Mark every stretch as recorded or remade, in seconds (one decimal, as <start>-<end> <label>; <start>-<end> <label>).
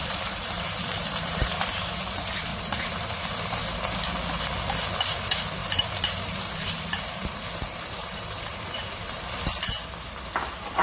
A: 0.0-1.9 remade; 1.9-2.5 recorded; 2.5-3.4 remade; 3.4-5.6 recorded; 5.6-7.3 remade; 7.3-10.8 recorded